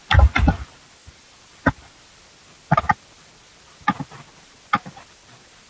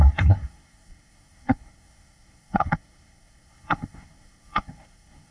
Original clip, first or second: first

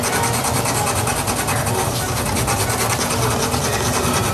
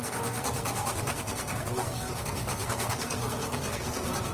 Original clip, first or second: first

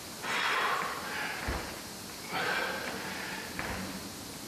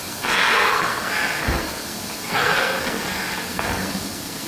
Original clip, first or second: first